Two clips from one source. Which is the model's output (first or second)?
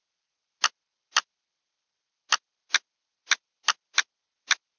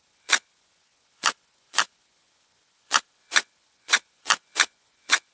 second